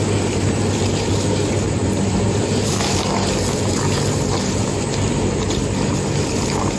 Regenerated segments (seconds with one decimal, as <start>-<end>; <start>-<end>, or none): none

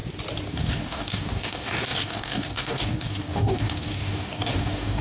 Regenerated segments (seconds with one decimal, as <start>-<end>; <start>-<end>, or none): 0.5-5.0

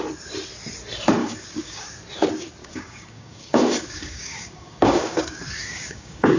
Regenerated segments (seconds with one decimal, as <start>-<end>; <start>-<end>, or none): 1.2-1.9; 2.6-6.4

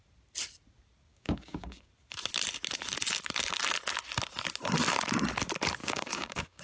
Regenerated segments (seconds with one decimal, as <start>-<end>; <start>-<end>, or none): 1.1-1.9; 5.8-6.6

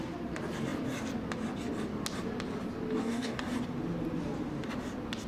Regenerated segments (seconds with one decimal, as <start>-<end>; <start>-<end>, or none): 3.0-3.5

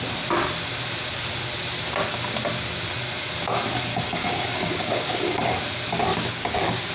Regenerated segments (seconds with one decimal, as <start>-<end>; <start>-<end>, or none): 3.9-5.4; 6.1-6.9